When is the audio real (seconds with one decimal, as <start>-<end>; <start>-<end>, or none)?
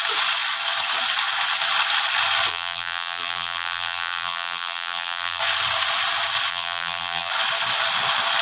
0.0-2.5; 5.4-6.5; 7.3-8.4